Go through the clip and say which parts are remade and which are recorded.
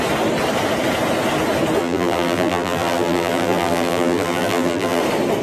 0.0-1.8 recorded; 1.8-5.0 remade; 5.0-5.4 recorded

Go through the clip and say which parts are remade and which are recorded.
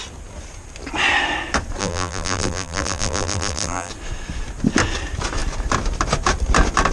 0.0-1.8 recorded; 1.8-3.9 remade; 3.9-6.9 recorded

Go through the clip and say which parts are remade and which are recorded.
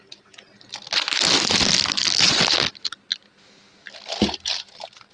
0.0-5.1 recorded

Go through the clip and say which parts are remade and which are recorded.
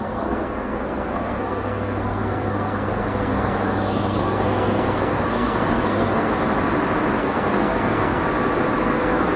0.0-6.3 remade; 6.3-7.2 recorded; 7.2-8.2 remade; 8.2-8.8 recorded; 8.8-9.4 remade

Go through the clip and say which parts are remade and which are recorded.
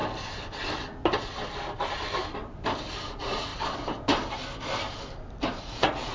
0.0-3.1 recorded; 3.1-3.5 remade; 3.5-5.6 recorded; 5.6-6.1 remade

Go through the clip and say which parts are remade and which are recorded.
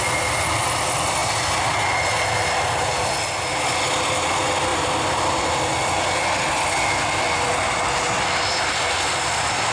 0.0-9.7 recorded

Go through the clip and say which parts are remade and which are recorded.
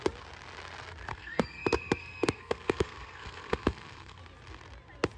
0.0-1.1 recorded; 1.1-4.2 remade; 4.2-5.2 recorded